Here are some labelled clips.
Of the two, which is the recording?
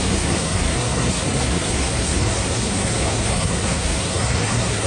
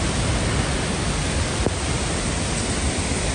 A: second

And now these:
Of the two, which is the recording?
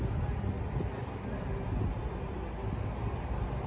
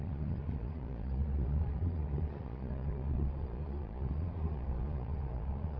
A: first